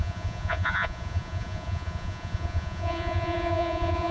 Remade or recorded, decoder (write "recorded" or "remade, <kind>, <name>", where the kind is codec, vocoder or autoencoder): remade, vocoder, Vocos